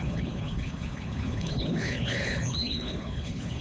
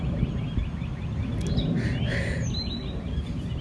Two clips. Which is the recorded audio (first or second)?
second